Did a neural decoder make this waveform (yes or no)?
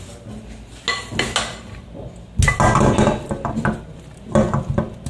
no